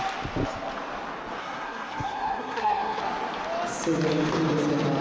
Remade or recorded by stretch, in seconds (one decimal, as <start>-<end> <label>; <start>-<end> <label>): 0.0-1.4 recorded; 1.4-3.0 remade; 3.0-5.0 recorded